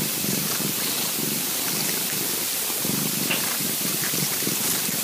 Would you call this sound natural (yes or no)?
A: yes